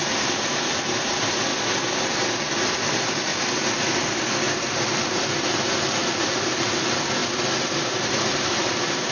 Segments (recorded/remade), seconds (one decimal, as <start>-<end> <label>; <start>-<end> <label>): 0.0-1.5 remade; 1.5-2.7 recorded; 2.7-3.3 remade; 3.3-4.5 recorded; 4.5-7.2 remade; 7.2-8.0 recorded; 8.0-9.1 remade